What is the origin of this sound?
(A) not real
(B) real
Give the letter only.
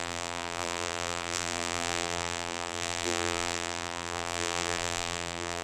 A